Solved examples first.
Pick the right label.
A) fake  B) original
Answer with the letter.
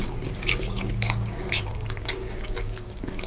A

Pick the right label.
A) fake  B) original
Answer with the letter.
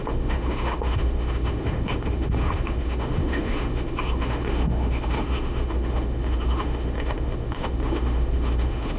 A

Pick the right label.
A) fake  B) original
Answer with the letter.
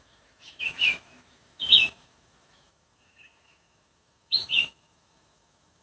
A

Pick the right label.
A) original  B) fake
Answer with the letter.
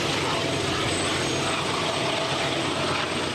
A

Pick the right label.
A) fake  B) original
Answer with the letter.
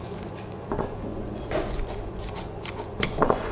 A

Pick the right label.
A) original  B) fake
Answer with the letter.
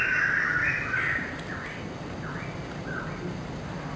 A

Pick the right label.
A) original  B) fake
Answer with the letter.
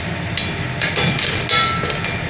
A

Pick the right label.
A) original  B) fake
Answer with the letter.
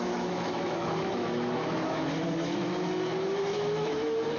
B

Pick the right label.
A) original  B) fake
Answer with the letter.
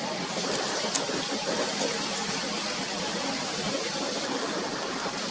A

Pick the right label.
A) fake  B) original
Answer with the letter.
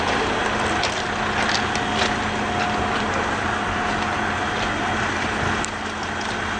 B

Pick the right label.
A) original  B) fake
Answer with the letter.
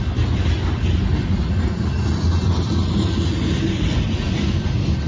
A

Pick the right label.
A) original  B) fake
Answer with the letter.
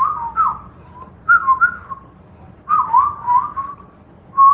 A